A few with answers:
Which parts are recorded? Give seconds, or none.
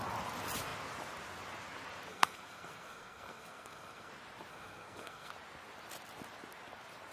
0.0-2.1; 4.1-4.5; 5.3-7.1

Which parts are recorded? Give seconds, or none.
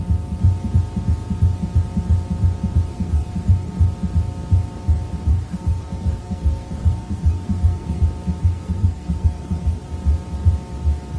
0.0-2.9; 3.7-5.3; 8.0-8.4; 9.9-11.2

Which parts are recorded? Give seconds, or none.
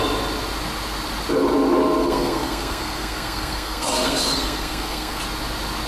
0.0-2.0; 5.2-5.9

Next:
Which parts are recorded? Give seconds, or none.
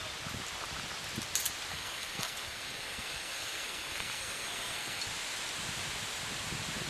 0.0-1.7; 5.0-6.9